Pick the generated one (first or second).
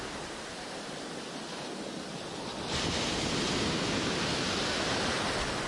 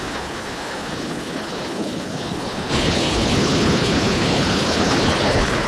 second